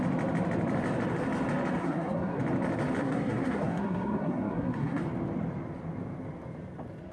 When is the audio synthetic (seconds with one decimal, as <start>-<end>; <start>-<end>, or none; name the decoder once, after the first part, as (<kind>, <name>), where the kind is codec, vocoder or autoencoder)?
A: 1.8-2.4 (codec, SNAC); 3.0-5.0